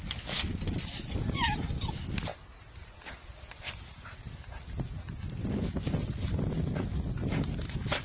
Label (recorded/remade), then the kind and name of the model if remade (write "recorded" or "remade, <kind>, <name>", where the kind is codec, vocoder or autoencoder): recorded